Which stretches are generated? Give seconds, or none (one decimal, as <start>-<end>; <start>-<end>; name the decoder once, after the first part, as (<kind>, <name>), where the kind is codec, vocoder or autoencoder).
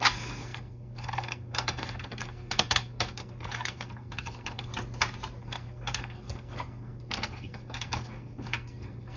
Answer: 0.0-4.7 (codec, SNAC); 5.4-9.2